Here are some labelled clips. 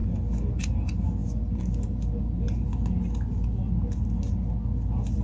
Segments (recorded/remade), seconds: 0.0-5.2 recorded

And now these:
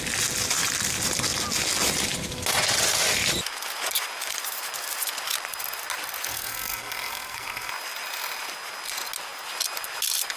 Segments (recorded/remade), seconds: 0.0-6.3 recorded; 6.3-7.7 remade; 7.7-10.4 recorded

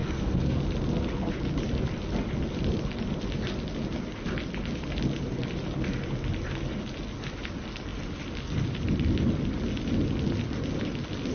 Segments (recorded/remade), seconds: 0.0-0.6 remade; 0.6-11.3 recorded

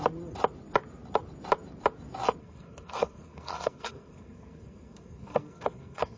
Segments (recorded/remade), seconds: 0.0-2.4 recorded; 2.4-6.2 remade

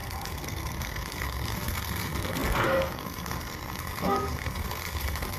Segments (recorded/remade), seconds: 0.0-5.4 remade

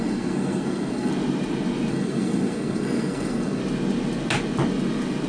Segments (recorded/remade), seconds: 0.0-1.1 remade; 1.1-1.9 recorded; 1.9-3.6 remade; 3.6-5.3 recorded

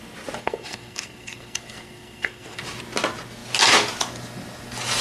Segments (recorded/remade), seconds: 0.0-0.4 recorded; 0.4-2.6 remade; 2.6-5.0 recorded

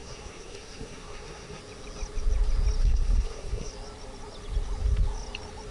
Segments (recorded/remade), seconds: 0.0-1.6 remade; 1.6-2.8 recorded; 2.8-3.7 remade; 3.7-5.7 recorded